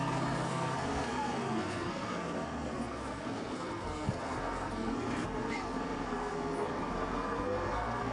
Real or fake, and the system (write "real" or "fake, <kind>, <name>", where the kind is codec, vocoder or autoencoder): fake, codec, SNAC